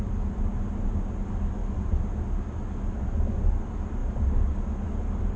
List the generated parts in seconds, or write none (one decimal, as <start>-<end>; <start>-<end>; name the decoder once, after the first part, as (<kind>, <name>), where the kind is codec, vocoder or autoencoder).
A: none